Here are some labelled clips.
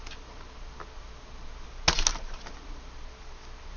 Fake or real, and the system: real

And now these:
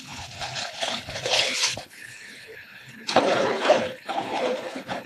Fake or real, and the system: fake, codec, HILCodec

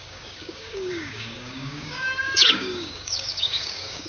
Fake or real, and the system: fake, codec, DAC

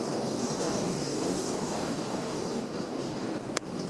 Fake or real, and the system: fake, codec, DAC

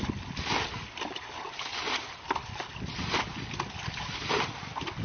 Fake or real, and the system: real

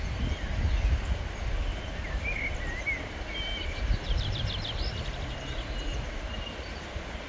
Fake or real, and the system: real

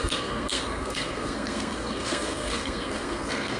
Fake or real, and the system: fake, codec, SNAC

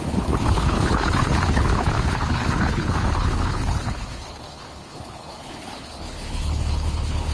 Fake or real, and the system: fake, codec, HILCodec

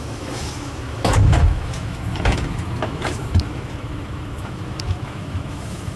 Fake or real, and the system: fake, autoencoder, DAC-VAE